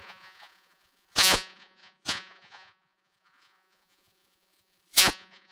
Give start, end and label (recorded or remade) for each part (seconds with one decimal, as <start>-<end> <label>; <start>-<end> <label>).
0.0-5.5 remade